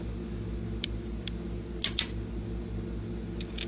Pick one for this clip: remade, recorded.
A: recorded